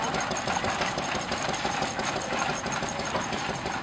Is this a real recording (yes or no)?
yes